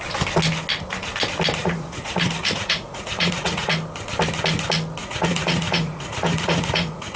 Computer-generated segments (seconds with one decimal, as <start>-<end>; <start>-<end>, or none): 1.6-3.7; 5.0-7.2